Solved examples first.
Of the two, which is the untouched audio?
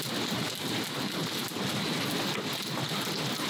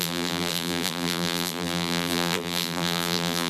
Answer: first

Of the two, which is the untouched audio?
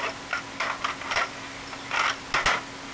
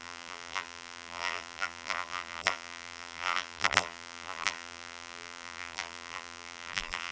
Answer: first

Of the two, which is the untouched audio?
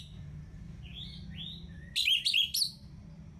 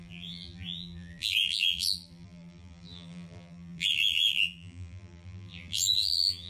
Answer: first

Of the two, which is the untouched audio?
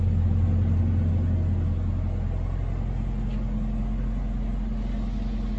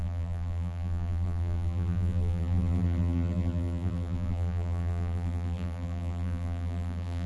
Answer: first